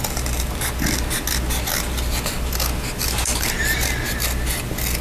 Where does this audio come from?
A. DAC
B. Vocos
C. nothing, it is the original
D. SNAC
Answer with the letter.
C